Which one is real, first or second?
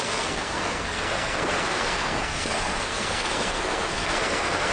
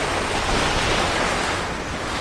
second